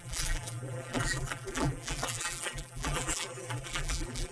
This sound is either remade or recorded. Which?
remade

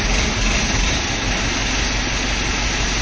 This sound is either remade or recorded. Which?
recorded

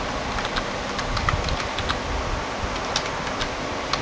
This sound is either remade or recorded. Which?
recorded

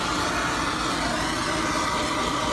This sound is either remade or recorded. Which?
recorded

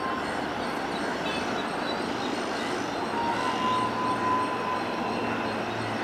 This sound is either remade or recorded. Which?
recorded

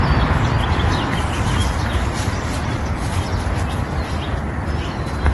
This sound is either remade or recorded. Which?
remade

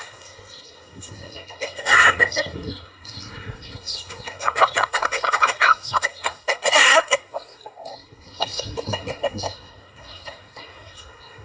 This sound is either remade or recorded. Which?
remade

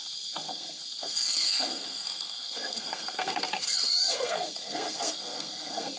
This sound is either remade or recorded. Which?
remade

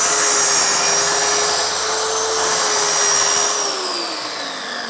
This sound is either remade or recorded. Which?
recorded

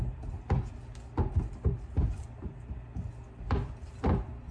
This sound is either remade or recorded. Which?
recorded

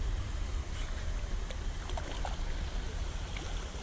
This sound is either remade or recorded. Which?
recorded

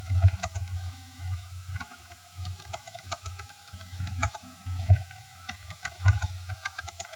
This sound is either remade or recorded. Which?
remade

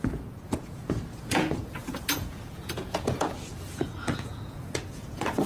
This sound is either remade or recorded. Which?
remade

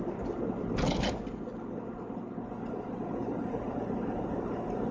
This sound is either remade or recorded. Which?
recorded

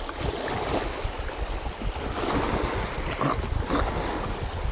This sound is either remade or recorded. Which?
recorded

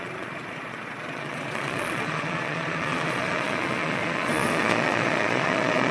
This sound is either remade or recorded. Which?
remade